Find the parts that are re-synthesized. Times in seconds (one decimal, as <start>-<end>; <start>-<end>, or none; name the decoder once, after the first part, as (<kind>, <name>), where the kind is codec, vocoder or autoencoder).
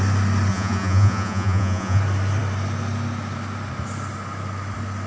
0.5-2.0 (vocoder, Vocos)